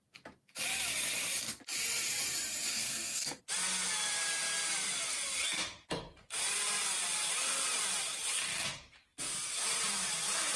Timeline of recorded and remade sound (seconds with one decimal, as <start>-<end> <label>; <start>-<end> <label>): 0.0-2.7 recorded; 2.7-3.4 remade; 3.4-10.6 recorded